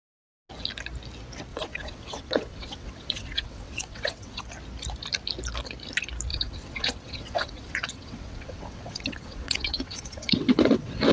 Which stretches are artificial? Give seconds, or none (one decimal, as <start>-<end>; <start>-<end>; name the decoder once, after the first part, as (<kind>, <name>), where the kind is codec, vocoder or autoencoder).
1.5-4.4 (vocoder, WaveNeXt); 6.3-11.1